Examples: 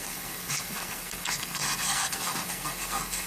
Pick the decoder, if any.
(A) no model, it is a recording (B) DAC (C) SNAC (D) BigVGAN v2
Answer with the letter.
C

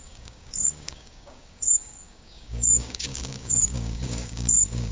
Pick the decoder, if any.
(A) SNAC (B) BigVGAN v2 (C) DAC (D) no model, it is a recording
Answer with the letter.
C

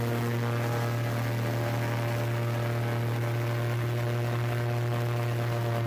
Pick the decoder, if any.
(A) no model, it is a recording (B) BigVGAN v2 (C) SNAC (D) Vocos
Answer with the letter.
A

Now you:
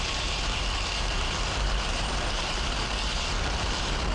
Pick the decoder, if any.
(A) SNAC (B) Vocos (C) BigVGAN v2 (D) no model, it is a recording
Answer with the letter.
C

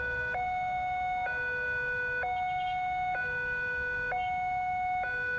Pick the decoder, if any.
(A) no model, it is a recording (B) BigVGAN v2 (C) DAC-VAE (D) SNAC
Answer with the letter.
A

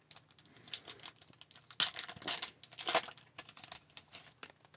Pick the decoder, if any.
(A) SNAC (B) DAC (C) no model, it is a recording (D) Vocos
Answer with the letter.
C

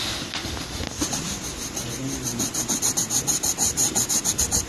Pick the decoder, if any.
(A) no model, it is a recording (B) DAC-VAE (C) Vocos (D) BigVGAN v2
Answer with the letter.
A